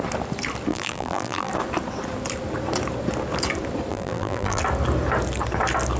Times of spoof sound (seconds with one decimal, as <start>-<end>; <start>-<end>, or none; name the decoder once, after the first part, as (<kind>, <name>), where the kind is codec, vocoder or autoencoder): 0.7-1.5 (vocoder, BigVGAN v2); 3.9-4.6